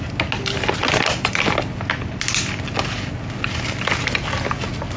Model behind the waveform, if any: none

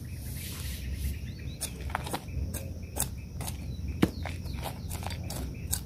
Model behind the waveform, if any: none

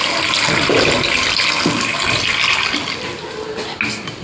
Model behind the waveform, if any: none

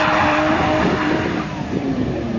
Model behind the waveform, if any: vocoder, BigVGAN v2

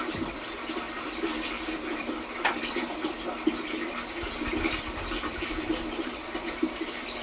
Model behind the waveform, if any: vocoder, BigVGAN v2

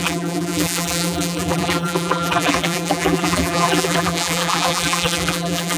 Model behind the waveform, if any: vocoder, BigVGAN v2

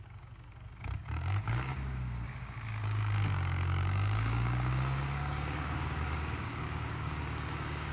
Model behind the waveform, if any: codec, DAC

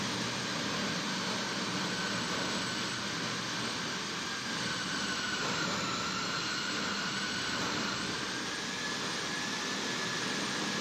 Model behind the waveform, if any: none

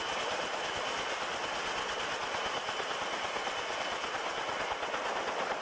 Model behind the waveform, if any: none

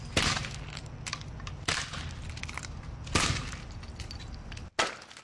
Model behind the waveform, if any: none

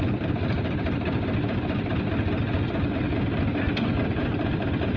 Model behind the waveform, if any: none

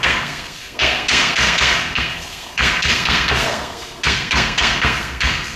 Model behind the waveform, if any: codec, SNAC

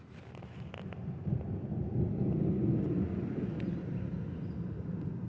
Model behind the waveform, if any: vocoder, BigVGAN v2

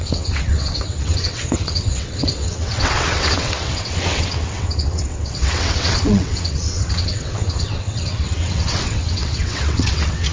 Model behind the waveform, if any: vocoder, WaveNeXt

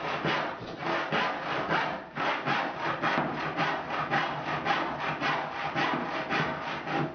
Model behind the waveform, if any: none